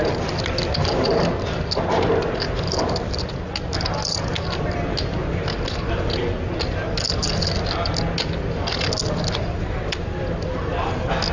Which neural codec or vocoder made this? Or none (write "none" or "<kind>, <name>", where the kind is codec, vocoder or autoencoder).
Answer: none